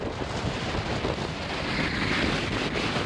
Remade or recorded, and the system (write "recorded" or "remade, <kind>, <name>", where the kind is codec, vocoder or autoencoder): recorded